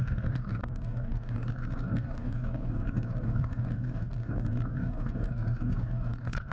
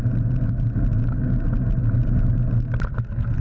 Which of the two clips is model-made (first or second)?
first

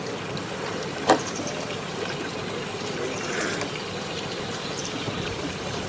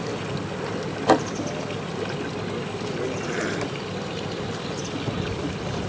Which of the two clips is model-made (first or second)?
first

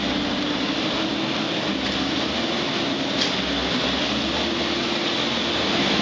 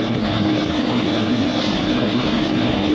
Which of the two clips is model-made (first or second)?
second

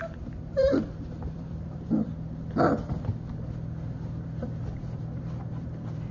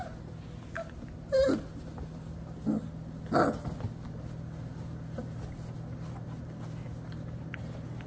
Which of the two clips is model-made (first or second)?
first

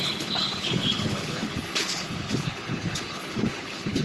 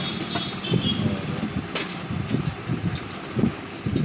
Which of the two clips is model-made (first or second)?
first